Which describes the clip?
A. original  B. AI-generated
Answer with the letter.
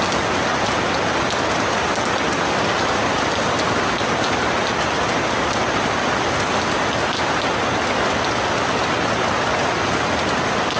A